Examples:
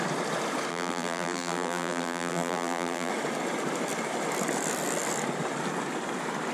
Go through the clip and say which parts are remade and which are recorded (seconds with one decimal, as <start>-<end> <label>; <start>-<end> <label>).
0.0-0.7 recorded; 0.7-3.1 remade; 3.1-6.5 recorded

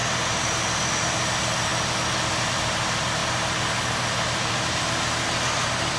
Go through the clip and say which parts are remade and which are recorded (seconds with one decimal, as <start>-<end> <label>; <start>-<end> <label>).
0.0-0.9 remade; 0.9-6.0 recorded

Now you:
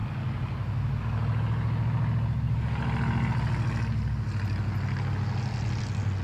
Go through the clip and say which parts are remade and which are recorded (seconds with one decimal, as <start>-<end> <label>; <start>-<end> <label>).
0.0-6.2 recorded

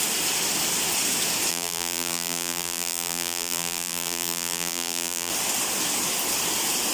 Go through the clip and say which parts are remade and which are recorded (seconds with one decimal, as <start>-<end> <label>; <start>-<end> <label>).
0.0-1.5 recorded; 1.5-5.3 remade; 5.3-6.9 recorded

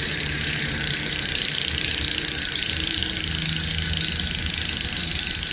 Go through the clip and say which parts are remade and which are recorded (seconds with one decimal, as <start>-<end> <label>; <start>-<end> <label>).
0.0-3.0 remade; 3.0-5.0 recorded; 5.0-5.5 remade

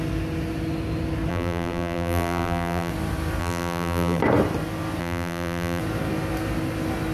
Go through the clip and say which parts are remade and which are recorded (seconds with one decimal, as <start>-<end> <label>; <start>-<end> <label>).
0.0-1.3 recorded; 1.3-2.9 remade; 2.9-3.4 recorded; 3.4-4.2 remade; 4.2-5.0 recorded; 5.0-5.8 remade; 5.8-7.1 recorded